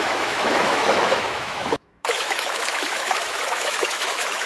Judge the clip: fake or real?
fake